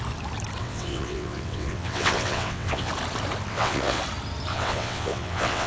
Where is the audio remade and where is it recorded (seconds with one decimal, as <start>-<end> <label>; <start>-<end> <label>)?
0.0-0.6 recorded; 0.6-2.9 remade; 2.9-3.5 recorded; 3.5-4.0 remade; 4.0-4.5 recorded; 4.5-5.7 remade